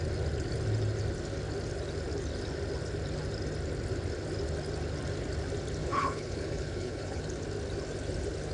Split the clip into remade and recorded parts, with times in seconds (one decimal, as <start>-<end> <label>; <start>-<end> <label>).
0.0-5.8 recorded; 5.8-7.2 remade; 7.2-8.5 recorded